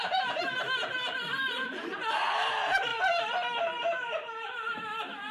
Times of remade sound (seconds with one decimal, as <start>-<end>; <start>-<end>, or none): 0.0-2.9; 3.6-5.3